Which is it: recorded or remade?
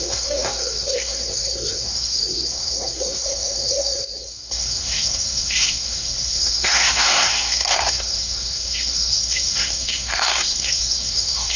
remade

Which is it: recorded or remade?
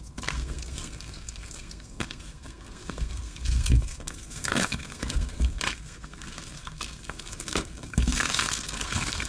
remade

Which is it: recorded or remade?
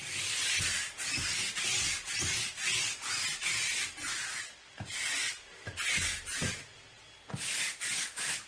recorded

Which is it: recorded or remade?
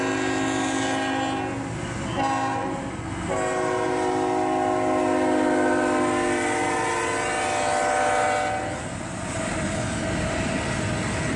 recorded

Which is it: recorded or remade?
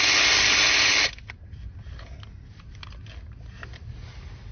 recorded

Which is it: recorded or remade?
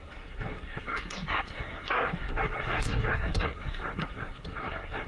remade